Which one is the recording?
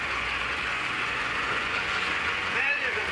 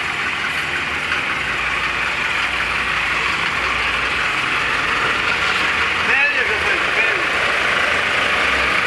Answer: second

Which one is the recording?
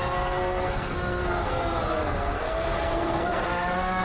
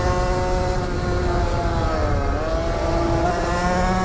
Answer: second